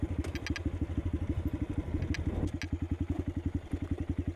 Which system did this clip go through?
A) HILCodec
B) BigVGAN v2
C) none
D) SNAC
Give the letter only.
C